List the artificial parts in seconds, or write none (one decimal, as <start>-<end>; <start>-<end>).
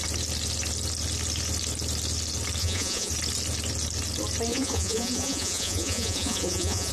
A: 2.6-3.1; 4.5-6.9